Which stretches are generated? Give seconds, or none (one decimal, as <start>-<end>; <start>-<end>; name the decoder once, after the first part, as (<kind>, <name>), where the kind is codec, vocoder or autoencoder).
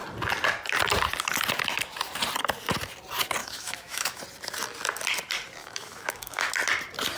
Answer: 3.4-4.2 (autoencoder, DAC-VAE); 5.6-6.5